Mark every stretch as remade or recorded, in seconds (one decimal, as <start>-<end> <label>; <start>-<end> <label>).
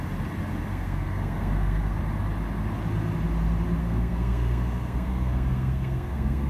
0.0-0.7 recorded; 0.7-2.0 remade; 2.0-3.8 recorded; 3.8-6.5 remade